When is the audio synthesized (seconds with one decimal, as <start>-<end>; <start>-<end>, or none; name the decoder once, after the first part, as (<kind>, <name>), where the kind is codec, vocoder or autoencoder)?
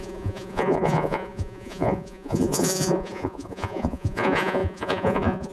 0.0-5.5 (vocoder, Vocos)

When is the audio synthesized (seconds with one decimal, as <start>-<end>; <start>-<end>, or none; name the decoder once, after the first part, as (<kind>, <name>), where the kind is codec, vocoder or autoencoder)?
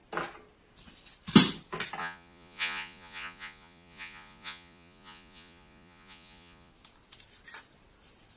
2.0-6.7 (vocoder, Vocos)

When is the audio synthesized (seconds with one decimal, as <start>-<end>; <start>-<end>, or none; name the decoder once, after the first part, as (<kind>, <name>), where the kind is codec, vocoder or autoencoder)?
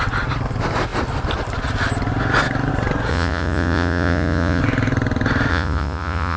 3.1-4.6 (vocoder, Vocos); 5.5-6.4